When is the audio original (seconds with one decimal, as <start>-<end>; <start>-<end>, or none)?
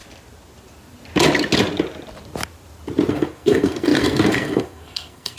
0.0-3.1